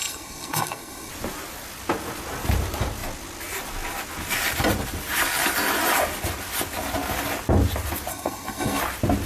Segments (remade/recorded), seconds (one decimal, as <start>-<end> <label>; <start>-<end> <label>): 0.0-1.1 remade; 1.1-8.1 recorded; 8.1-8.8 remade; 8.8-9.3 recorded